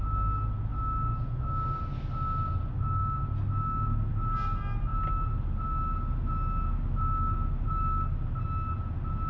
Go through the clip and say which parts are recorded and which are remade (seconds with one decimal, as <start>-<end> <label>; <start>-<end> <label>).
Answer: 0.0-9.3 recorded